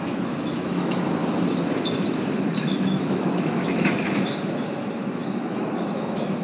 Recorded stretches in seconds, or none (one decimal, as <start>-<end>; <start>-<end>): 1.2-2.6

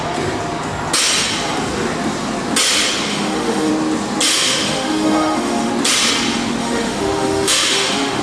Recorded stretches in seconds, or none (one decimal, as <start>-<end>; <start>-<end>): 0.0-3.1; 3.7-4.3; 5.7-6.6

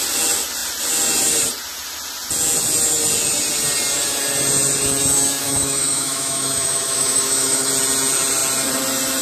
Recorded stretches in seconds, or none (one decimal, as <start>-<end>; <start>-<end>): 0.0-5.4; 7.7-9.2

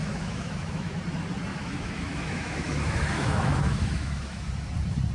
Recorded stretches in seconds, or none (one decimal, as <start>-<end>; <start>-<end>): 1.0-1.5; 4.5-5.1

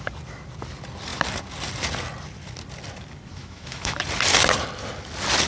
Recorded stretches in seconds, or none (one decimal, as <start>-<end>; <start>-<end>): 0.0-3.3; 4.0-5.5

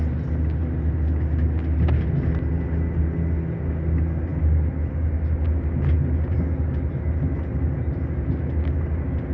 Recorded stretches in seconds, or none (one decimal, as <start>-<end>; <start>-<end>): 0.0-9.3

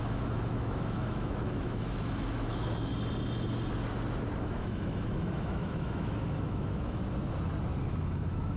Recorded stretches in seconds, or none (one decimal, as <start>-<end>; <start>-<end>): 2.9-4.4; 7.0-7.8